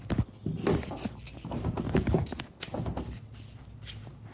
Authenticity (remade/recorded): recorded